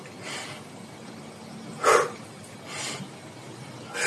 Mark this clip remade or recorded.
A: recorded